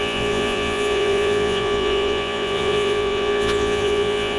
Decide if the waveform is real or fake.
fake